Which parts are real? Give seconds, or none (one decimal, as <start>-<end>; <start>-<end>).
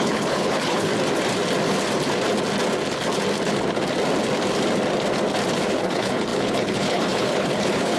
0.9-5.7